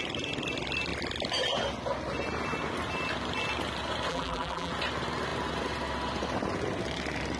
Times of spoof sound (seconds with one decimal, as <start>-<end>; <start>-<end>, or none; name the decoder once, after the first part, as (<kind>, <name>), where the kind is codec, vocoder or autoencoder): 4.1-4.7 (vocoder, BigVGAN v2)